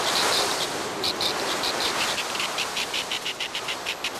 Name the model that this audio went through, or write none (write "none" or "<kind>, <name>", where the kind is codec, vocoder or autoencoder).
none